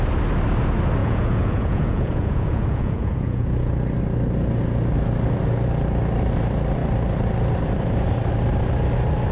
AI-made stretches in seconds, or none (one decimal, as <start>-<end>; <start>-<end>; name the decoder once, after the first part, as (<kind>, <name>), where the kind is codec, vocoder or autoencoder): 1.0-3.7 (vocoder, Vocos)